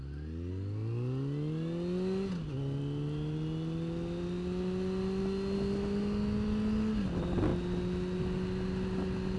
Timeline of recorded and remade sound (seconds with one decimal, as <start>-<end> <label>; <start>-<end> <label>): 0.0-9.4 recorded